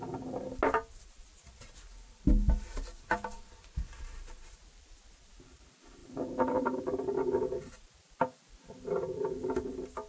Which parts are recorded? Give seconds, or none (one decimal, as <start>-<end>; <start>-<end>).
0.0-10.1